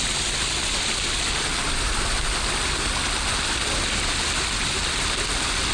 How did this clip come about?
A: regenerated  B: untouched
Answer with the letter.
B